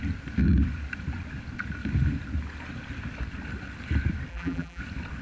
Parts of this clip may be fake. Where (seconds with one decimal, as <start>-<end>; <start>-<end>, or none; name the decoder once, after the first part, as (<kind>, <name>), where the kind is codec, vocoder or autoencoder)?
4.3-4.8 (vocoder, BigVGAN v2)

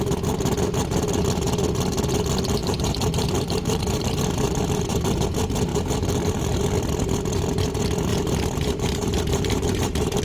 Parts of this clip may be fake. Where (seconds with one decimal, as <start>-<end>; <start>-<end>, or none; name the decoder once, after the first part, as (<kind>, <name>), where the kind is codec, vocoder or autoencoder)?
2.6-5.0 (vocoder, BigVGAN v2); 5.7-6.6; 8.1-10.2

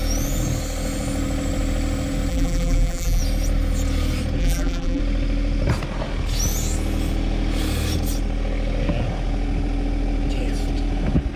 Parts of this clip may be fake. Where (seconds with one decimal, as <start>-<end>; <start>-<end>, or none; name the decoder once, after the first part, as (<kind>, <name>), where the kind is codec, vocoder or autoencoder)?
2.3-3.2 (vocoder, BigVGAN v2); 4.4-5.0

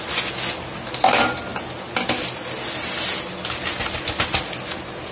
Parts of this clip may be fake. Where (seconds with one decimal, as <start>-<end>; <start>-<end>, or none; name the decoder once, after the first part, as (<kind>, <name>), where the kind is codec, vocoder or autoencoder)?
none

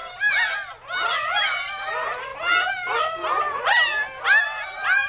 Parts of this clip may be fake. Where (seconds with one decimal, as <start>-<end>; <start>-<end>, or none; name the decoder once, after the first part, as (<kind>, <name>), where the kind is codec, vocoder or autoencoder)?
1.1-2.3 (vocoder, BigVGAN v2); 4.4-5.1

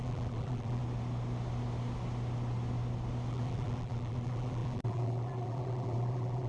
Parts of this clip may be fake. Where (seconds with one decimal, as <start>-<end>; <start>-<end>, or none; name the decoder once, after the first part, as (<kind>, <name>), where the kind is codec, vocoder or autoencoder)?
0.0-0.8 (vocoder, BigVGAN v2); 3.3-6.5